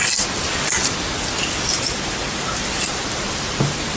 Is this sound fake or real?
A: real